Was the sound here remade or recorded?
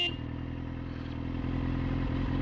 recorded